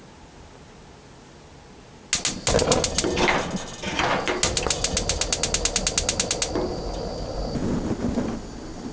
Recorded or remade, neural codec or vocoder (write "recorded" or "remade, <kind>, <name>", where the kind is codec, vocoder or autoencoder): recorded